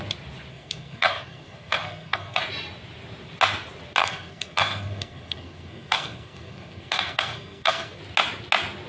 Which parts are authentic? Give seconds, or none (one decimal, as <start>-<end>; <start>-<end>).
0.0-0.5; 2.4-4.0; 8.0-8.9